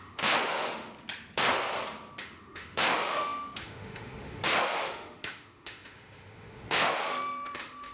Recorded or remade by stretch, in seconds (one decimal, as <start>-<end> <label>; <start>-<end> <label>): 0.0-0.9 remade; 0.9-2.2 recorded; 2.2-7.9 remade